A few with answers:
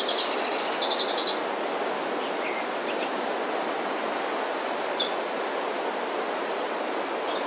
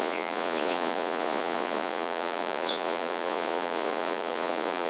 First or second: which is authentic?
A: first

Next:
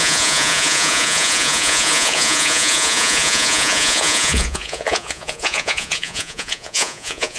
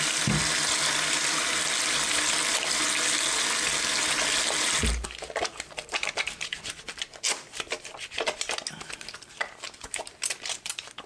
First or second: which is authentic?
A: second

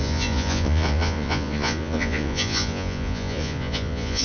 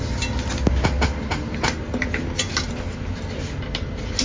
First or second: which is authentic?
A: second